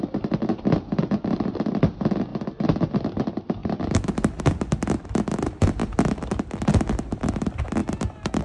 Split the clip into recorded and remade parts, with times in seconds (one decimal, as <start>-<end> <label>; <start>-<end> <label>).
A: 0.0-2.3 remade; 2.3-3.0 recorded; 3.0-3.6 remade; 3.6-4.4 recorded; 4.4-5.8 remade; 5.8-6.8 recorded; 6.8-8.4 remade